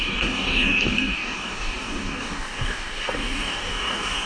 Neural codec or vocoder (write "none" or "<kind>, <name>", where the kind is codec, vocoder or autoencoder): codec, DAC